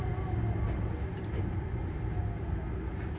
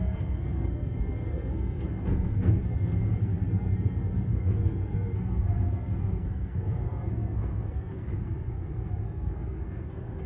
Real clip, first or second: first